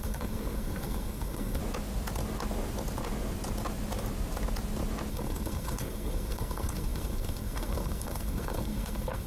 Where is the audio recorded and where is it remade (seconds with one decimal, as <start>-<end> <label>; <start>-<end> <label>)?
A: 0.0-1.6 remade; 1.6-5.1 recorded; 5.1-9.3 remade